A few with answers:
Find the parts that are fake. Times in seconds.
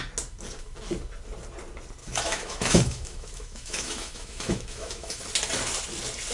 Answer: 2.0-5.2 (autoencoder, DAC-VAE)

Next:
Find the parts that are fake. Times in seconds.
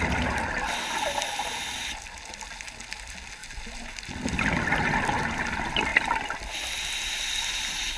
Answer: none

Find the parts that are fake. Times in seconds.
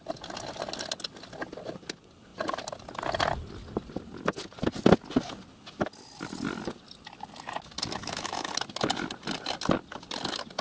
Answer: 8.0-8.5 (autoencoder, DAC-VAE)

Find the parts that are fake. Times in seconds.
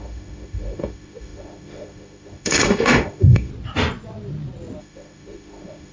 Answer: 0.0-3.5 (autoencoder, DAC-VAE); 4.8-5.9